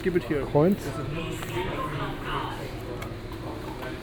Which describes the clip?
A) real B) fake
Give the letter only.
A